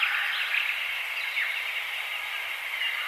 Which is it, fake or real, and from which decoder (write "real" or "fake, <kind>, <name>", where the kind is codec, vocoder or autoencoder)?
real